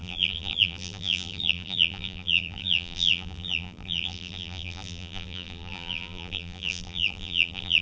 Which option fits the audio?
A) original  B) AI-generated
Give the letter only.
B